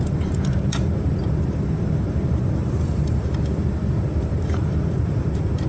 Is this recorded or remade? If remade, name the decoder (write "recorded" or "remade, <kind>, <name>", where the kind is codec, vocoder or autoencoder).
remade, vocoder, BigVGAN v2